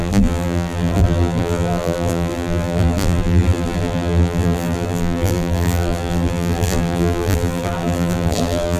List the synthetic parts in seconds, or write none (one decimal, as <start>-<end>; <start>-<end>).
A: 0.0-8.8